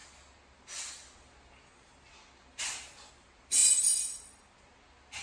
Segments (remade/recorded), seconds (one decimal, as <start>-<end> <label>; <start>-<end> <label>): 0.0-5.2 recorded